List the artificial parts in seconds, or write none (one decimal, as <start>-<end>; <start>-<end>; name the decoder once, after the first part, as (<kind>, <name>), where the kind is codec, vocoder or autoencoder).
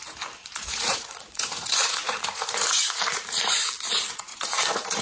0.4-3.4 (vocoder, Vocos); 4.3-5.0